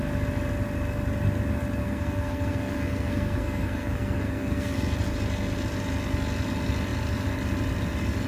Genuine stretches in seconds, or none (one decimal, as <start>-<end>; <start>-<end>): 0.0-1.8; 4.7-8.3